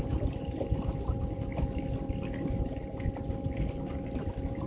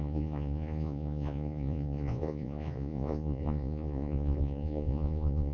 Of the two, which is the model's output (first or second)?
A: second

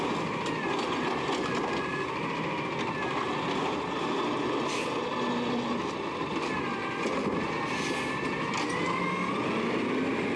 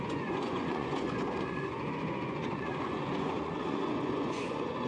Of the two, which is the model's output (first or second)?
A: second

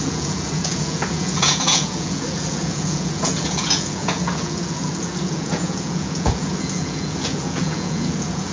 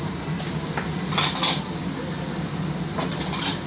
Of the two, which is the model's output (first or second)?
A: first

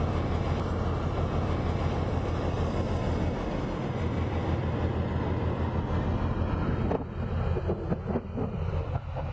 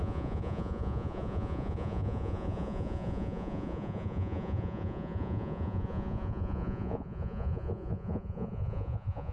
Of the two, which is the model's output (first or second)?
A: second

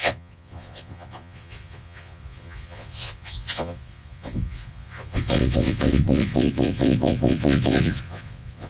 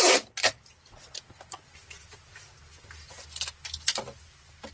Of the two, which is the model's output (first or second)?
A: first